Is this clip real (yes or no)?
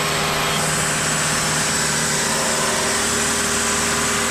yes